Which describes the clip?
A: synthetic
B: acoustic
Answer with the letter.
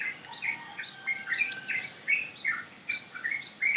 B